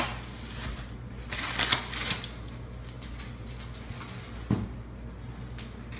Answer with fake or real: real